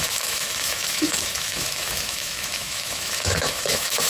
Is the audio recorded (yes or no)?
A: no